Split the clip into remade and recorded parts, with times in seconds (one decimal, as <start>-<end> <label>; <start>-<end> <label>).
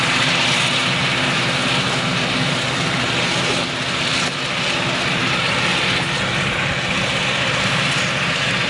0.0-8.7 recorded